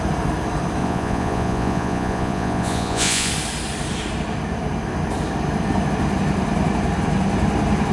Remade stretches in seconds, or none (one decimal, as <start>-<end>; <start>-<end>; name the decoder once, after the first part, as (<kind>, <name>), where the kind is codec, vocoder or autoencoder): 0.8-3.3 (vocoder, Vocos)